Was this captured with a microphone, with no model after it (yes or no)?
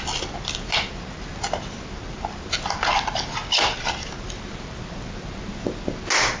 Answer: yes